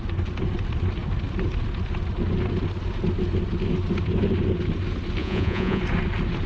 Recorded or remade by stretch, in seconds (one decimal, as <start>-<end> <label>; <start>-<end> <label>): 0.0-5.2 recorded; 5.2-5.8 remade; 5.8-6.5 recorded